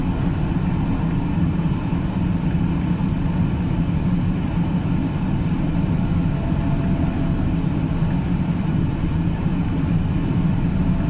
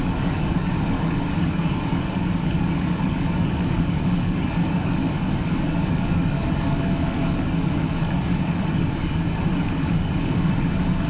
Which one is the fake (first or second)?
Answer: second